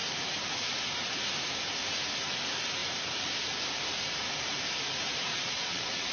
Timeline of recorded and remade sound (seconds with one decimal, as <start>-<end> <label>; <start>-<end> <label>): 0.0-5.3 recorded; 5.3-6.1 remade